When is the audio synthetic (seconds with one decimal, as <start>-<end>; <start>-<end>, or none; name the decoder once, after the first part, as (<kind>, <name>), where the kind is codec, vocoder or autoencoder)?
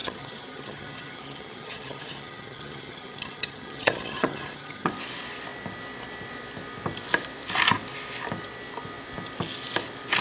0.0-4.9 (vocoder, HiFi-GAN)